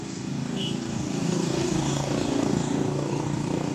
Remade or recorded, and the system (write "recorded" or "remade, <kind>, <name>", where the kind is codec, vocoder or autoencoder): remade, codec, DAC